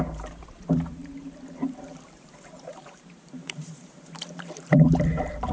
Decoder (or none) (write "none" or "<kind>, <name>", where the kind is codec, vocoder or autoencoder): vocoder, BigVGAN v2